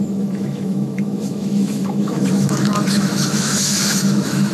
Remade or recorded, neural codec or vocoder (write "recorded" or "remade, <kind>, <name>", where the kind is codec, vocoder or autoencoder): remade, autoencoder, DAC-VAE